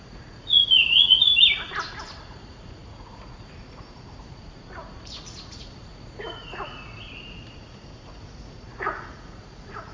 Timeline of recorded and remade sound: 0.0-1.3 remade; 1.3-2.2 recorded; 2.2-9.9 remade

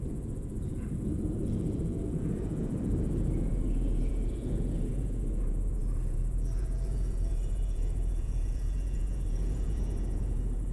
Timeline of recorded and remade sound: 0.0-10.7 remade

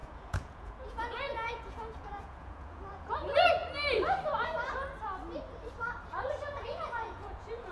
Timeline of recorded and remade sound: 0.0-3.6 remade; 3.6-6.0 recorded; 6.0-7.7 remade

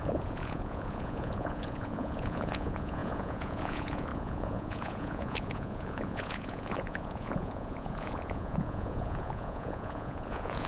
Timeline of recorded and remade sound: 0.0-10.7 remade

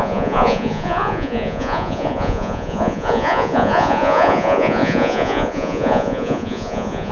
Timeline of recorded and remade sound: 0.0-7.1 remade

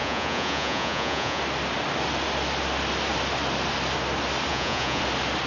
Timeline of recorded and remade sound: 0.0-1.4 remade; 1.4-4.5 recorded; 4.5-5.0 remade; 5.0-5.5 recorded

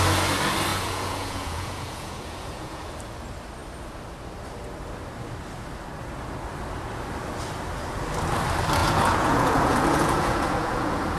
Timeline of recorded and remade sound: 0.0-0.7 recorded; 0.7-2.9 remade; 2.9-8.8 recorded; 8.8-11.2 remade

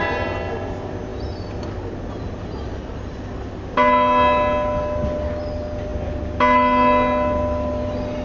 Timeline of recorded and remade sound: 0.0-8.2 recorded